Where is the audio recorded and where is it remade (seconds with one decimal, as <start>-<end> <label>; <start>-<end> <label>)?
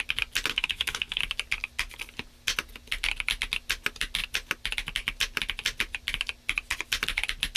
0.0-0.5 recorded; 0.5-1.2 remade; 1.2-7.6 recorded